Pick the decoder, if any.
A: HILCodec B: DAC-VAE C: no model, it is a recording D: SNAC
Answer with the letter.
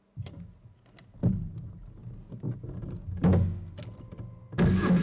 C